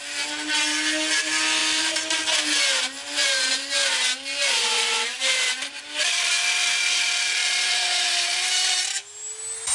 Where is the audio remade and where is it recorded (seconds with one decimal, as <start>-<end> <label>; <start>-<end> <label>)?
0.0-1.6 recorded; 1.6-2.2 remade; 2.2-4.6 recorded; 4.6-6.2 remade; 6.2-7.4 recorded; 7.4-8.8 remade; 8.8-9.7 recorded